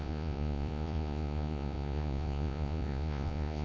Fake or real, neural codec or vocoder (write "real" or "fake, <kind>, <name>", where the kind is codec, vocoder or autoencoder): fake, vocoder, Vocos